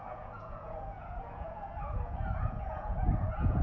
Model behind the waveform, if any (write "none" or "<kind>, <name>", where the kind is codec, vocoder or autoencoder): vocoder, Vocos